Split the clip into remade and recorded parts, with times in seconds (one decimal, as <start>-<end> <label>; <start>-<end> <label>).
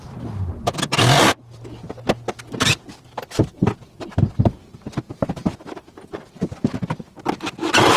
0.0-8.0 recorded